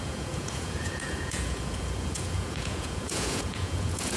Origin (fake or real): fake